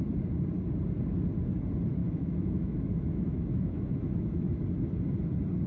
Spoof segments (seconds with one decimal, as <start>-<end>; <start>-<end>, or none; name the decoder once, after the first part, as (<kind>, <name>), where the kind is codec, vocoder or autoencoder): 2.0-4.6 (autoencoder, DAC-VAE)

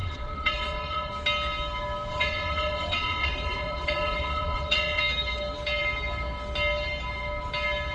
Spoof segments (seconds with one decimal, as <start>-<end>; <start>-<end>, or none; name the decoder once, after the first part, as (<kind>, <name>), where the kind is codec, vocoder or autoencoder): 0.0-1.1 (vocoder, WaveNeXt); 2.1-5.0